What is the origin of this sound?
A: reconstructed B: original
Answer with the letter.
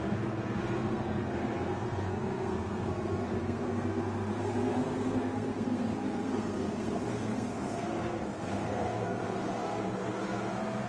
A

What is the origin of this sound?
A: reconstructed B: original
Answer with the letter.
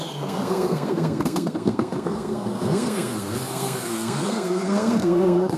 A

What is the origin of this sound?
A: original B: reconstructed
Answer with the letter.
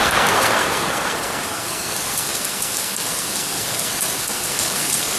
B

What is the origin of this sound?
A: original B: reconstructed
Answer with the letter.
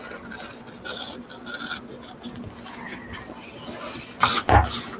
A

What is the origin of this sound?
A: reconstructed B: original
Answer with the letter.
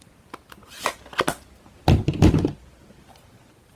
B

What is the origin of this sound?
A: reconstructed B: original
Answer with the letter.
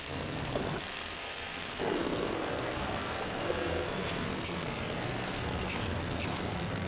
A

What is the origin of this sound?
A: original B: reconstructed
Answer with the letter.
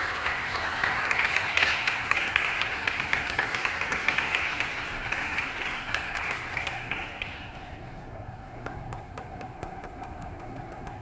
B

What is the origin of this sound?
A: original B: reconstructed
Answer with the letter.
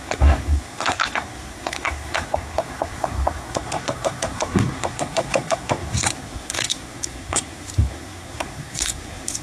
B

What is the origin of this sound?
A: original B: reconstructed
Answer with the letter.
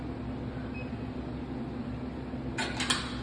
A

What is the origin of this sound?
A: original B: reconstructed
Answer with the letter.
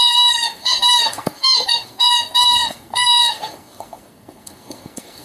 B